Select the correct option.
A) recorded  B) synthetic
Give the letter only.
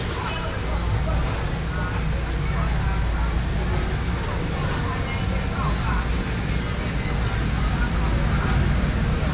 A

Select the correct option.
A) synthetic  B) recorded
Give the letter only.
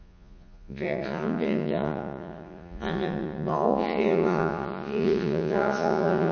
A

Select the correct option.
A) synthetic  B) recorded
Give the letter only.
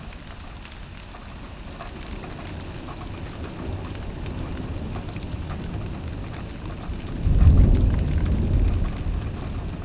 B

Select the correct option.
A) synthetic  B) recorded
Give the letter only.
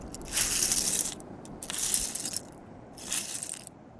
B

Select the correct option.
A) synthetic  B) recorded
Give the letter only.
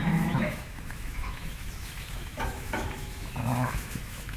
A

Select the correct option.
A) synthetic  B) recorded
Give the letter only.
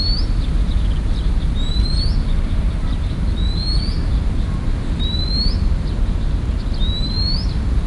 B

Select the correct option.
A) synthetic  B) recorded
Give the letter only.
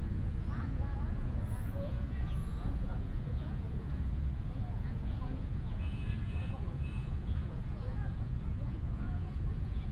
A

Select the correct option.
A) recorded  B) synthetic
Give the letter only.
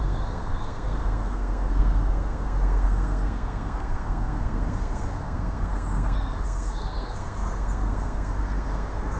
B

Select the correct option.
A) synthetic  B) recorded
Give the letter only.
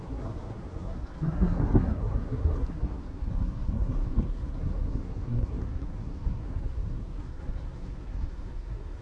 A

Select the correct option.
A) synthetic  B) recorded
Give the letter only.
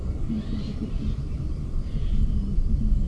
B